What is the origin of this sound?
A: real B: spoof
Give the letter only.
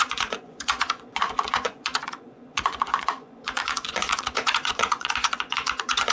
B